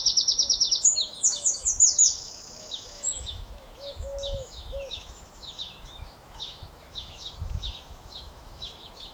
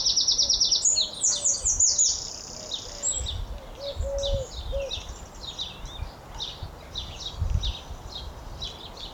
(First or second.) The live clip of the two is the second